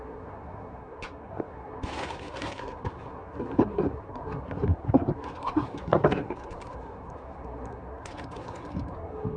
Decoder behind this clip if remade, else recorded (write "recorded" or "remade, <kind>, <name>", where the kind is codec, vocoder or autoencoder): remade, codec, SNAC